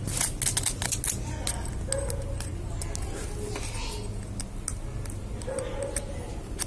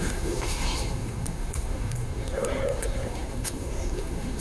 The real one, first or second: first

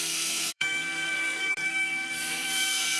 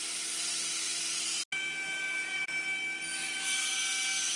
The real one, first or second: second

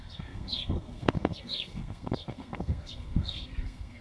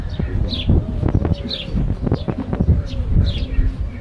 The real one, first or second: second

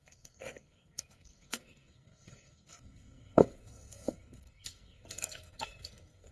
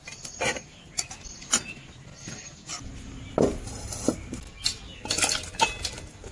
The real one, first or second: second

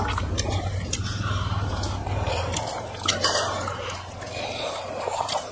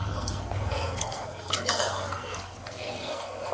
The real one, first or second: first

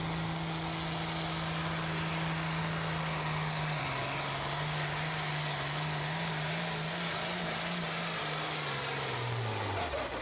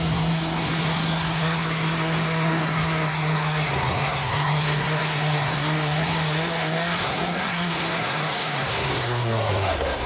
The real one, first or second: first